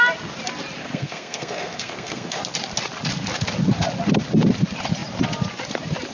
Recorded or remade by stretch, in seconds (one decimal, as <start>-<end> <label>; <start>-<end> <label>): 0.0-0.8 recorded; 0.8-2.4 remade; 2.4-6.1 recorded